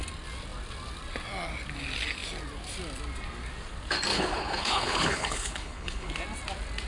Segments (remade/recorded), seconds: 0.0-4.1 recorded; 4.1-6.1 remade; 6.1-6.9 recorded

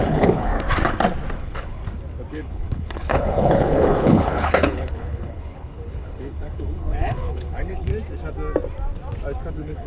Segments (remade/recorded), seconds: 0.0-0.5 remade; 0.5-1.4 recorded; 1.4-1.8 remade; 1.8-2.3 recorded; 2.3-7.9 remade; 7.9-9.5 recorded; 9.5-9.9 remade

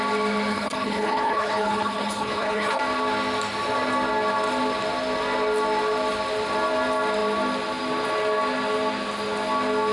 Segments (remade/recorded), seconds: 0.0-0.5 recorded; 0.5-2.8 remade; 2.8-9.9 recorded

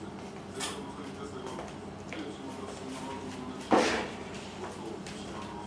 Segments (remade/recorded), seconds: 0.0-5.7 recorded

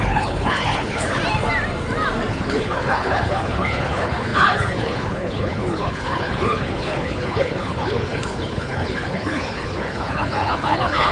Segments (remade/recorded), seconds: 0.0-1.2 remade; 1.2-2.3 recorded; 2.3-11.1 remade

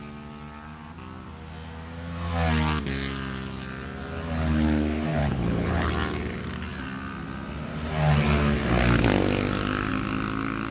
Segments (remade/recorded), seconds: 0.0-5.1 recorded; 5.1-5.9 remade; 5.9-10.7 recorded

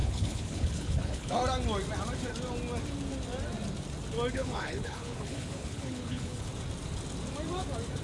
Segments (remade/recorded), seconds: 0.0-1.4 remade; 1.4-4.3 recorded; 4.3-6.5 remade; 6.5-8.0 recorded

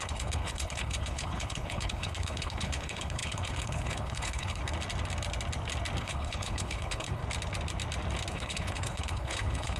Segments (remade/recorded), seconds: 0.0-4.6 remade; 4.6-6.0 recorded; 6.0-7.2 remade; 7.2-8.3 recorded; 8.3-9.8 remade